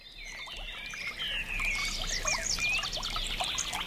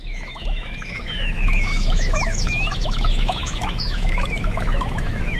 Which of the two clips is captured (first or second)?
first